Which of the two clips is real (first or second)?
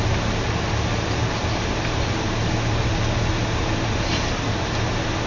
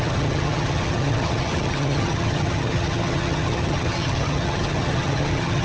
first